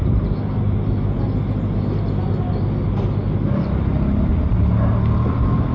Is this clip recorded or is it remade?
recorded